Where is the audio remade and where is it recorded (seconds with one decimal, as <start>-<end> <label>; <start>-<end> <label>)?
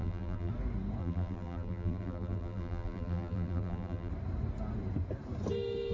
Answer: 0.0-0.5 remade; 0.5-1.0 recorded; 1.0-4.1 remade; 4.1-5.9 recorded